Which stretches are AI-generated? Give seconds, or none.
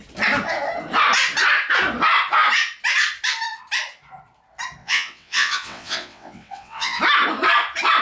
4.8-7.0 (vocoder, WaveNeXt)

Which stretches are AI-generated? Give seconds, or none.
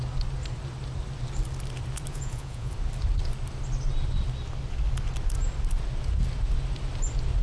2.1-2.7 (vocoder, Vocos)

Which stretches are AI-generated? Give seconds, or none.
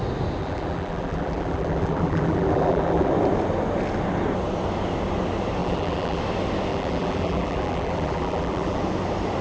0.4-3.1 (vocoder, BigVGAN v2); 5.6-6.2; 6.7-8.8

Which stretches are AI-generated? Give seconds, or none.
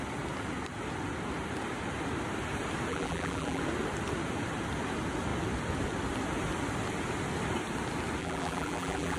2.9-3.6 (vocoder, BigVGAN v2); 8.2-9.2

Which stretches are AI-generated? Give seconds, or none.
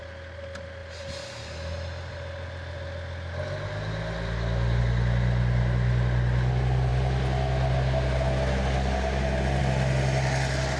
none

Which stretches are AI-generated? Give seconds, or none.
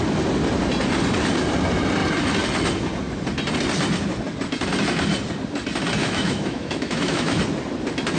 6.0-7.4 (autoencoder, DAC-VAE)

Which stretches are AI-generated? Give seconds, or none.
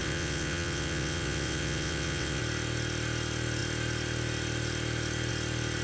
0.0-2.4 (vocoder, WaveNeXt)